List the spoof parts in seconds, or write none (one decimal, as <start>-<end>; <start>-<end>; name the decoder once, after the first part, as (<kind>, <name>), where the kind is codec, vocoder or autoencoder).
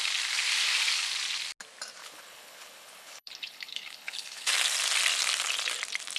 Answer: 2.0-4.5 (codec, HILCodec)